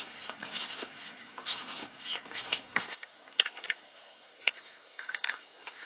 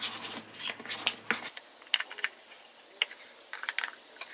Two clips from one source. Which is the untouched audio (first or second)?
second